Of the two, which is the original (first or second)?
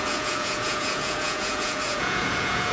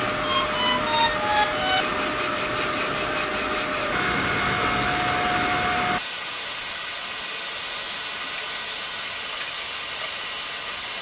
second